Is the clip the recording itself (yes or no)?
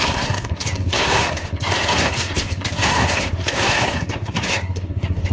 no